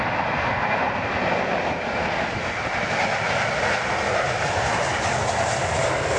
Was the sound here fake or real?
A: real